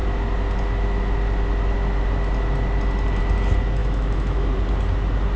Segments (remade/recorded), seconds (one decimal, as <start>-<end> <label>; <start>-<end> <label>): 0.0-3.8 recorded; 3.8-4.5 remade; 4.5-5.4 recorded